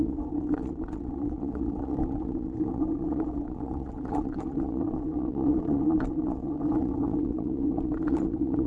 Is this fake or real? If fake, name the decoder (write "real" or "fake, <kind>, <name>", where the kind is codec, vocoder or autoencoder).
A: fake, vocoder, WaveNeXt